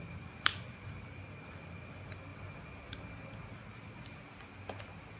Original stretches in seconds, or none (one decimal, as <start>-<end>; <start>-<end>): 2.3-4.8